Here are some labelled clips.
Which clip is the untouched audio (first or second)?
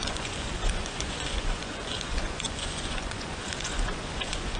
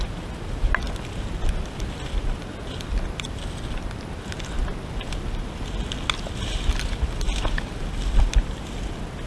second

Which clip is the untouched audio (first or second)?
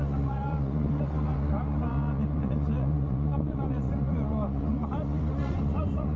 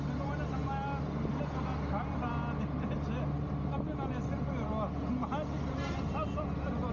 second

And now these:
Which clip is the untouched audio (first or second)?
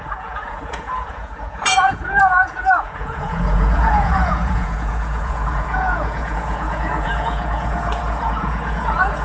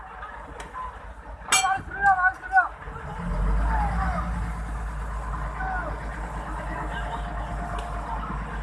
second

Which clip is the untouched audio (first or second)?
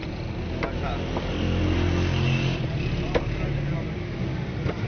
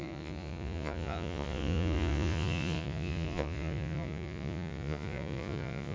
first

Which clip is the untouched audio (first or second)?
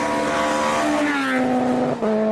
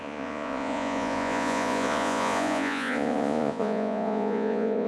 first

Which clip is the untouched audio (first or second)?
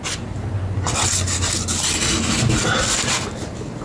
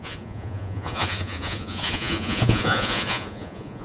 first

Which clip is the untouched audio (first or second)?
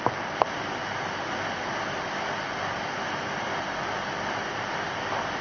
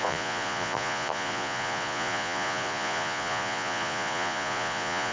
first